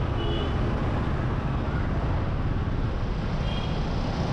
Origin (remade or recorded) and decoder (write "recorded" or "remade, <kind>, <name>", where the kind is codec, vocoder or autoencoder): recorded